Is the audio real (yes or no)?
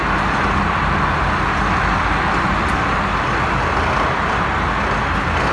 yes